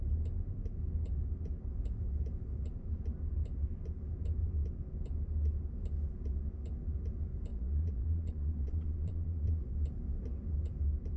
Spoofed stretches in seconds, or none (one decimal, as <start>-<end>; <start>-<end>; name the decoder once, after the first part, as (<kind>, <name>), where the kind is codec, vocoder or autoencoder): 7.5-9.6 (vocoder, Vocos)

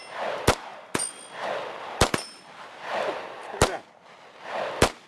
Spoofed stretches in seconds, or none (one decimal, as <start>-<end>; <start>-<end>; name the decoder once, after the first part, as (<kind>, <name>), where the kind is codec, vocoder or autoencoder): none

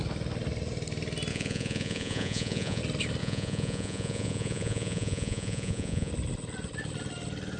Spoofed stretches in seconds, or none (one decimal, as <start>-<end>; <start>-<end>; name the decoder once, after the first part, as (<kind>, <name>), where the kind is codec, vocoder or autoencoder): 1.3-2.8 (vocoder, Vocos); 3.2-6.1

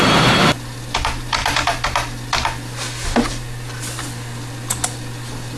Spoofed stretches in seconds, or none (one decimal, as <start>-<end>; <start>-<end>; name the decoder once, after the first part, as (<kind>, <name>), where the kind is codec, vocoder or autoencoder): none